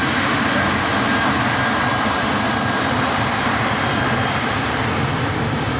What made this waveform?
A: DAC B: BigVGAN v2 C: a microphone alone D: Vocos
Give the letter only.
C